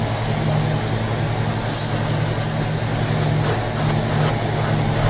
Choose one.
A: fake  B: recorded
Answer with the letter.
B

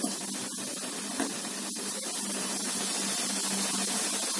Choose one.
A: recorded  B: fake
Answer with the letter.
A